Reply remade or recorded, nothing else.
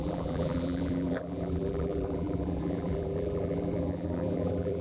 remade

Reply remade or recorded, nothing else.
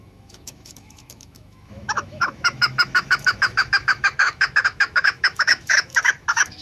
remade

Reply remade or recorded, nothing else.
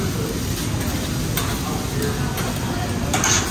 recorded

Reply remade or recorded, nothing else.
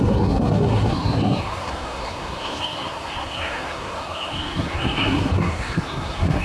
remade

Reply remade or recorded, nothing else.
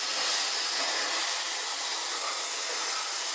recorded